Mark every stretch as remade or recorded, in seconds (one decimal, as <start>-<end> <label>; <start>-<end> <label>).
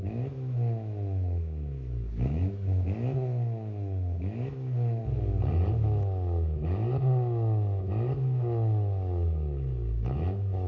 0.0-5.0 remade; 5.0-5.7 recorded; 5.7-10.7 remade